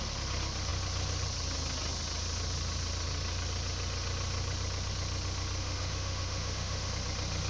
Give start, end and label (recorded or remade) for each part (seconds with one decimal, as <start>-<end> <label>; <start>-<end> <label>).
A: 0.0-5.6 recorded; 5.6-6.9 remade; 6.9-7.5 recorded